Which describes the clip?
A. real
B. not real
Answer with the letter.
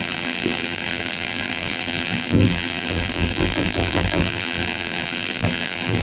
B